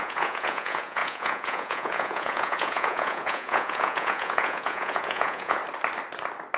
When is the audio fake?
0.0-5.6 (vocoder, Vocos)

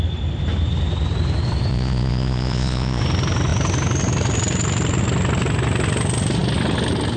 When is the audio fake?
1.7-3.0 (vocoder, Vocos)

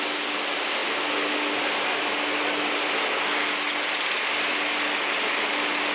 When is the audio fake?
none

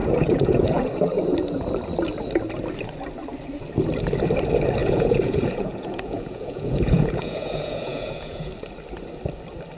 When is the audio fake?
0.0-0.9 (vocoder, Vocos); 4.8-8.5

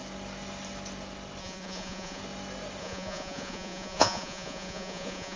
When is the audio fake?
1.4-2.2 (vocoder, Vocos); 2.8-5.4